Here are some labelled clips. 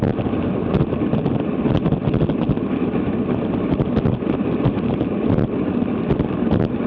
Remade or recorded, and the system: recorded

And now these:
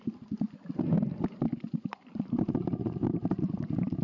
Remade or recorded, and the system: recorded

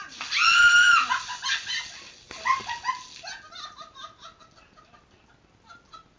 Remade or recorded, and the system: recorded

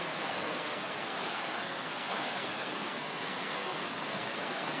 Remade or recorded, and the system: remade, codec, SNAC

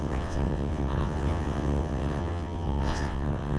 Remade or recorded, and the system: remade, vocoder, WaveNeXt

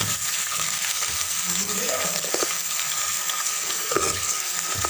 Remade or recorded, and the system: remade, codec, SNAC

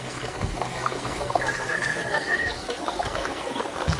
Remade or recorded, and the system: remade, codec, SNAC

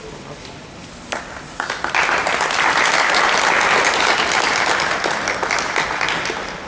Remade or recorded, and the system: recorded